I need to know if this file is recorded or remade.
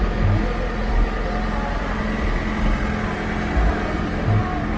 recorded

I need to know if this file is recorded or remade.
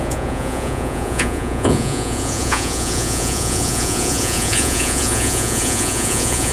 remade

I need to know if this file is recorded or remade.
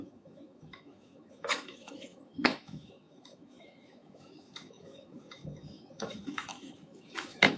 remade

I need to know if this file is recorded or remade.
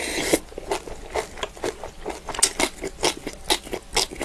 recorded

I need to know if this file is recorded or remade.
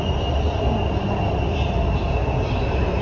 recorded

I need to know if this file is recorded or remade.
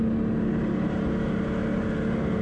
recorded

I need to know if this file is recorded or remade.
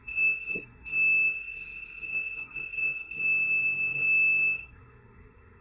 remade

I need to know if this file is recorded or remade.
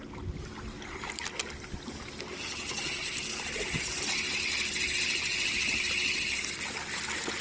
recorded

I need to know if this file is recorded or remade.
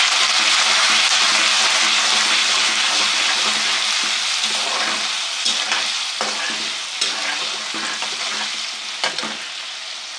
recorded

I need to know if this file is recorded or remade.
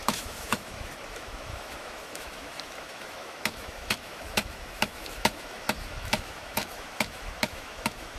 remade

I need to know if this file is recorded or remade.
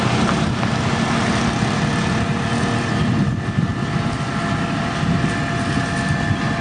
recorded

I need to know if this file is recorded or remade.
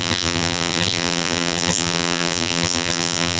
remade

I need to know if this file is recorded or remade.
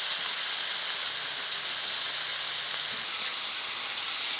recorded